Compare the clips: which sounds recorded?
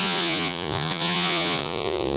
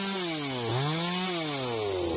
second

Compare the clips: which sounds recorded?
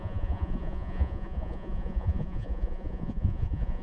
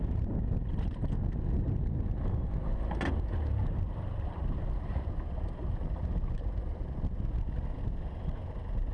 second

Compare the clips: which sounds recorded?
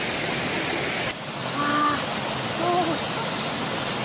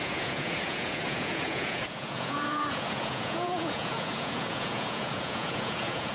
first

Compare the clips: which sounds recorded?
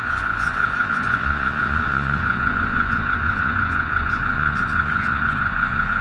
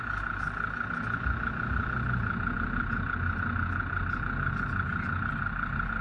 second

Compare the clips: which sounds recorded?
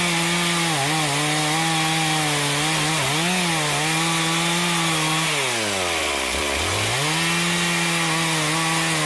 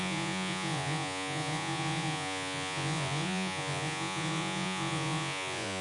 first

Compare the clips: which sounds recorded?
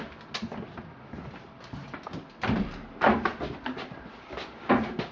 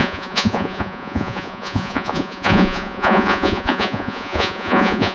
first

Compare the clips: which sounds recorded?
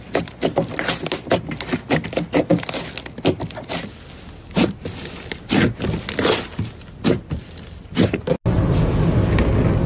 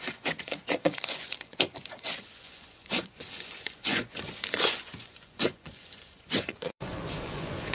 first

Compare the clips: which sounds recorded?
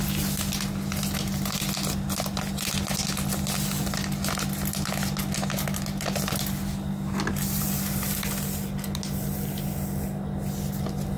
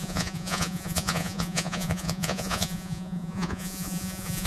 first